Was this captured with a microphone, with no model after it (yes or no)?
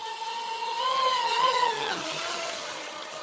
no